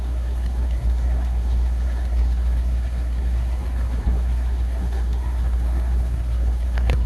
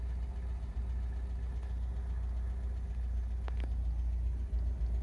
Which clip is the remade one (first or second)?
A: first